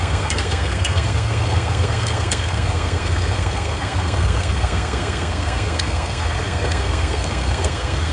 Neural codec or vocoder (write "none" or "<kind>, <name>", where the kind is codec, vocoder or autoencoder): codec, SNAC